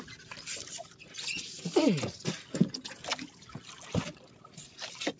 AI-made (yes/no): no